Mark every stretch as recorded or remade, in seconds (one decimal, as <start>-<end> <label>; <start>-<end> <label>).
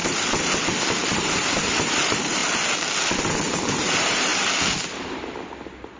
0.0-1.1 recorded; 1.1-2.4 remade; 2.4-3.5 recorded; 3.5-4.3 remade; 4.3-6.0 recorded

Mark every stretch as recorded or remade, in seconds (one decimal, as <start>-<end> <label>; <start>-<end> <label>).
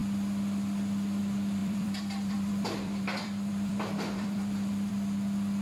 0.0-1.6 recorded; 1.6-4.9 remade; 4.9-5.6 recorded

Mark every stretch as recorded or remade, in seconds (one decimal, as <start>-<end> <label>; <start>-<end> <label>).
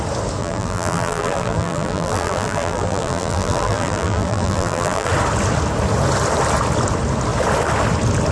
0.0-0.4 recorded; 0.4-5.1 remade; 5.1-8.3 recorded